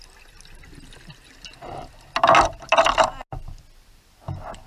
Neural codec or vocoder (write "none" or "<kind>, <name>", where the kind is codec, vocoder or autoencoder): none